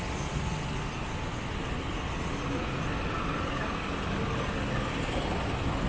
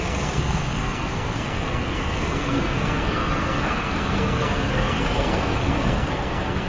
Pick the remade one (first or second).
second